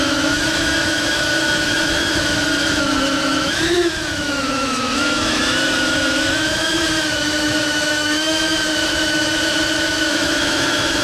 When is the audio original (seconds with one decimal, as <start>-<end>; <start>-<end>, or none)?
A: none